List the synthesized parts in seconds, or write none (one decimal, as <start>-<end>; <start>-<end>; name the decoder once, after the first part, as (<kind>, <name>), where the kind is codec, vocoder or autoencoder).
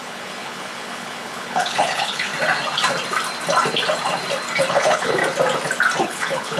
0.0-2.3 (codec, HILCodec); 4.7-5.2; 6.0-6.6